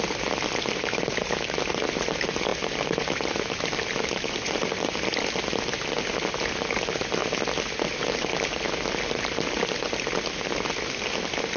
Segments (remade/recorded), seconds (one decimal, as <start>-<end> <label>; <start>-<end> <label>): 0.0-11.6 recorded